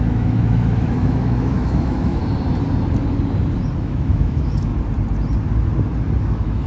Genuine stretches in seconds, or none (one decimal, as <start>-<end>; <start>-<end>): 2.2-3.8; 4.7-6.2